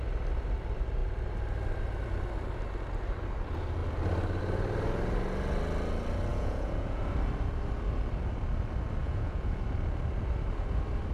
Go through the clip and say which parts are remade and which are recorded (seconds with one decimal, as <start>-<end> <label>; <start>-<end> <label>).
0.0-6.3 recorded; 6.3-7.0 remade; 7.0-9.0 recorded; 9.0-9.6 remade; 9.6-11.1 recorded